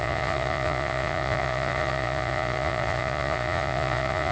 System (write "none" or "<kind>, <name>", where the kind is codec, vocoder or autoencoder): vocoder, Vocos